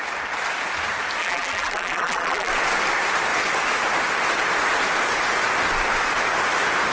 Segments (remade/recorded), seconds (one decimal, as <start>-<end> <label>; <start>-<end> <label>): 0.0-1.2 recorded; 1.2-2.5 remade; 2.5-6.9 recorded